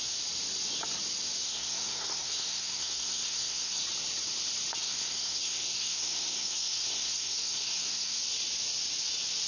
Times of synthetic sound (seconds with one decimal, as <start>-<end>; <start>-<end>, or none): 1.4-3.8; 4.8-8.2